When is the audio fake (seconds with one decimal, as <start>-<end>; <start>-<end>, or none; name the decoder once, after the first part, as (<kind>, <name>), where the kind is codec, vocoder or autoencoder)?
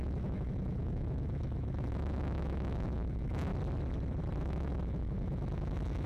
0.0-3.5 (autoencoder, DAC-VAE); 4.4-6.1